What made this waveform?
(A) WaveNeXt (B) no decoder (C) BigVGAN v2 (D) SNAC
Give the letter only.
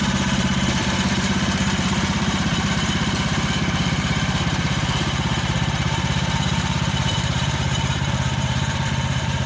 C